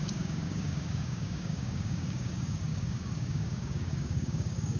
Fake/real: fake